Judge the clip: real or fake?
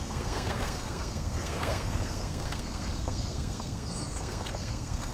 fake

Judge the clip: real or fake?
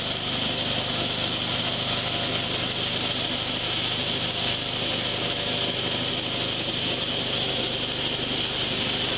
real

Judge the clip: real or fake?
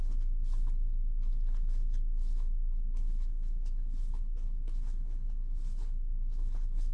fake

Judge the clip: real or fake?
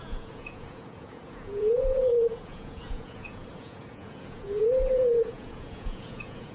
fake